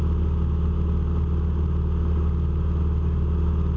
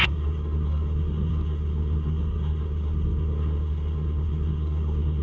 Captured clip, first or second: first